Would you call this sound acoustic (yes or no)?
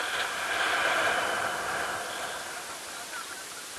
yes